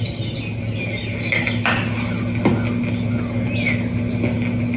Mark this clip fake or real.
real